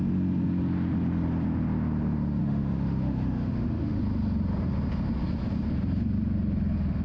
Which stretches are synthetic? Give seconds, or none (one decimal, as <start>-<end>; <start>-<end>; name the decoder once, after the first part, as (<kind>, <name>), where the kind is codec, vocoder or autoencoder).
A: 2.4-4.0 (autoencoder, DAC-VAE)